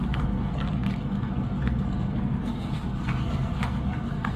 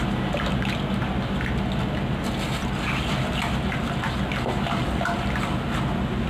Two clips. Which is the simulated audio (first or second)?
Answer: first